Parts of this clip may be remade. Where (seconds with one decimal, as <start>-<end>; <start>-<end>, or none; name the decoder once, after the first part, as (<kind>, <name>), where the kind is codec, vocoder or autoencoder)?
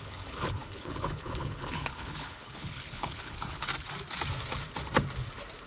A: 0.0-3.7 (codec, HILCodec)